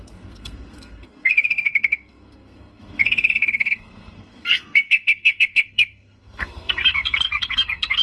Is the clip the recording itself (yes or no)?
no